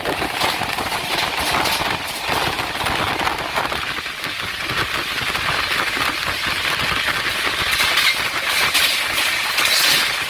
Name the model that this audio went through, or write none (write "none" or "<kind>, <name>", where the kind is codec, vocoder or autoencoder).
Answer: none